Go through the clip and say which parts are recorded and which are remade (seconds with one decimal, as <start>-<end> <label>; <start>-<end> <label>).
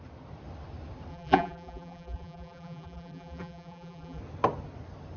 0.0-1.1 recorded; 1.1-4.2 remade; 4.2-5.2 recorded